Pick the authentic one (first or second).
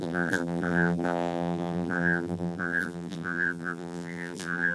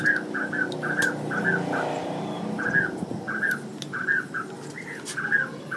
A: second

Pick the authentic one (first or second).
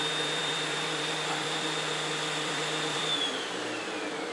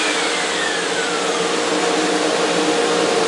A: second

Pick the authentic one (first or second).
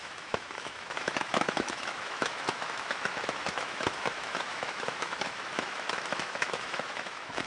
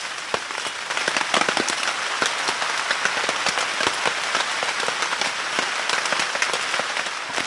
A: second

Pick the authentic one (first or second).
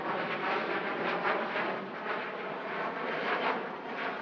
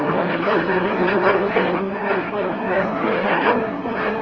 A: first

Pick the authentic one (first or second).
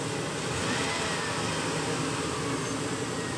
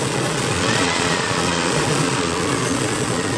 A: first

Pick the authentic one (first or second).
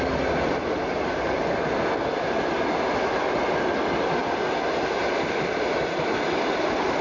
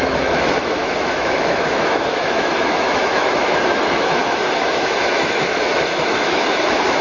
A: first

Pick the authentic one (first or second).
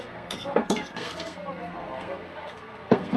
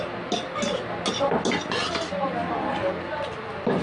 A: second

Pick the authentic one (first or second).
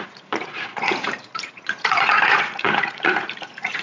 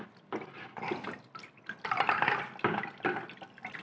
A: second